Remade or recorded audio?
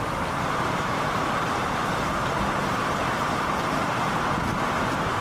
remade